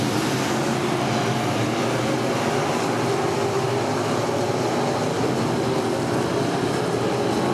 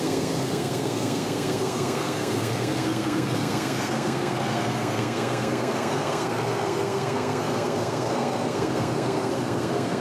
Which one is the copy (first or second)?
second